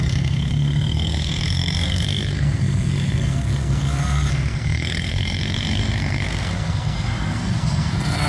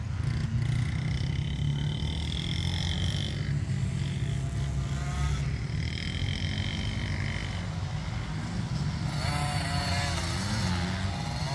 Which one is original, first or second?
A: second